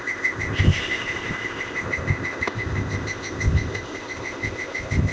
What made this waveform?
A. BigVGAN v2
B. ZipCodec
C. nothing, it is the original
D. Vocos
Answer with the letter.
B